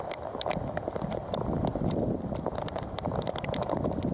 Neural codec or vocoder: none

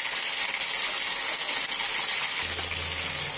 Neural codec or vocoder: none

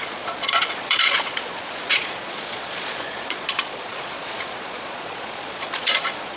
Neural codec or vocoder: vocoder, Vocos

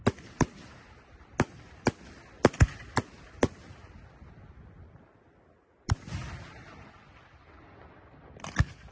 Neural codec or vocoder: none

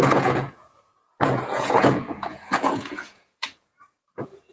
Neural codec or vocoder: vocoder, Vocos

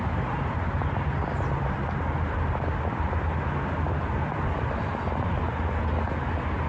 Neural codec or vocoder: none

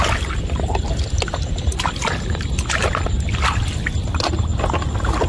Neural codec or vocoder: none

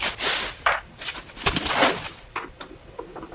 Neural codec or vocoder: none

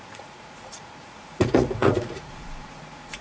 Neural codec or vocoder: vocoder, Vocos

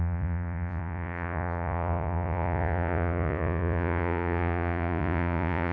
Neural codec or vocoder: vocoder, Vocos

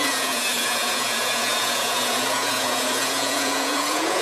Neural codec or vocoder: vocoder, Vocos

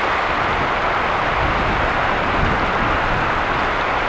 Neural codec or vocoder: none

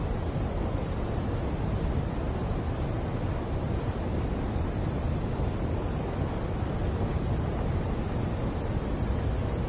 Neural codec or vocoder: none